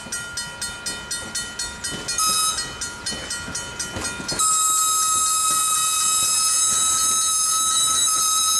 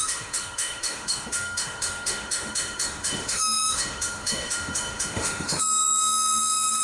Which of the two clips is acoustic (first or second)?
first